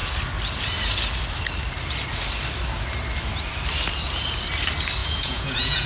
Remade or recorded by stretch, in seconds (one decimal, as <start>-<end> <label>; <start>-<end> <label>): 0.0-5.0 recorded; 5.0-5.9 remade

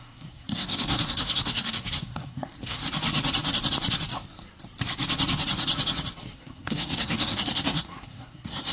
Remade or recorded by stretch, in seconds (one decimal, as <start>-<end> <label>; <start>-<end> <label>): 0.0-2.8 remade; 2.8-6.3 recorded; 6.3-8.7 remade